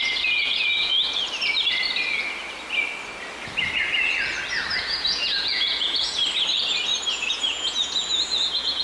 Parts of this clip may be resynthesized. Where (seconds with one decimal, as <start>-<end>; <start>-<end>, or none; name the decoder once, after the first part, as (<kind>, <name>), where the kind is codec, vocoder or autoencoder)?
0.0-0.9 (vocoder, Vocos); 4.8-6.2; 7.1-8.8